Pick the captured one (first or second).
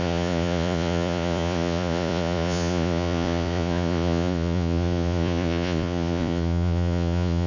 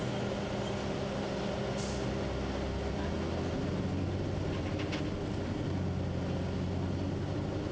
second